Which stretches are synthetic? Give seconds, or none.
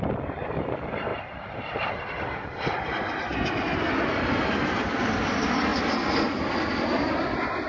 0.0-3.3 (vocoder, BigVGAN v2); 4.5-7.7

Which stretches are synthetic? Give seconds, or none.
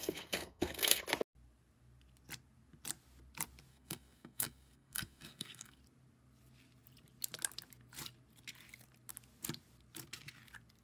0.0-1.0 (codec, SNAC); 3.7-5.8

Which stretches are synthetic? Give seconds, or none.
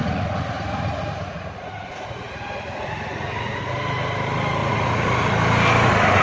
0.0-3.7 (vocoder, Vocos); 4.6-5.3